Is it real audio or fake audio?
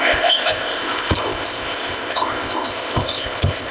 fake